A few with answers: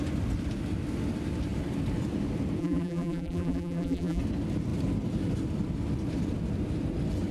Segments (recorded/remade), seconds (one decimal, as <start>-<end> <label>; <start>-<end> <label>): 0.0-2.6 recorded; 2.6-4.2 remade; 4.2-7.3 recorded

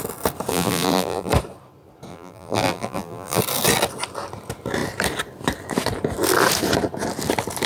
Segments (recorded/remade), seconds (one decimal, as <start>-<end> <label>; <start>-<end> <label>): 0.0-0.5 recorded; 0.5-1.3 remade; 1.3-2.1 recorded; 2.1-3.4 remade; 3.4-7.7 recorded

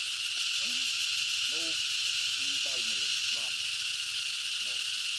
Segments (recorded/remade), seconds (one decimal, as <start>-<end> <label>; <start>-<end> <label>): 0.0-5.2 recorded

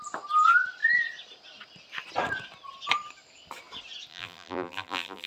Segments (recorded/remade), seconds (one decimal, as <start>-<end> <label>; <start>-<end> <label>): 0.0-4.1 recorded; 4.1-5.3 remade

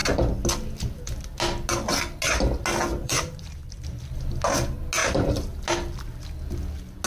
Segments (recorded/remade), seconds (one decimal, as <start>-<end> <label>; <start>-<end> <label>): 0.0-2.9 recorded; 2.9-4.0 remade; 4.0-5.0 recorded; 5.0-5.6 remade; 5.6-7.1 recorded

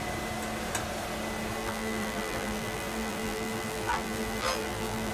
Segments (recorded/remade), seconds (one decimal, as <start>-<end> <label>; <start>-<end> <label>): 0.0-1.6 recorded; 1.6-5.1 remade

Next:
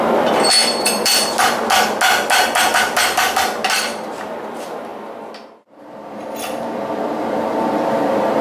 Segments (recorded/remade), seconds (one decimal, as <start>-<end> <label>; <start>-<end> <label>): 0.0-0.6 recorded; 0.6-1.1 remade; 1.1-8.4 recorded

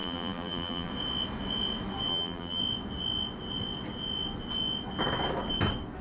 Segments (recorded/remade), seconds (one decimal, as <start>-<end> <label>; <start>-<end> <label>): 0.0-0.9 remade; 0.9-2.1 recorded; 2.1-2.6 remade; 2.6-6.0 recorded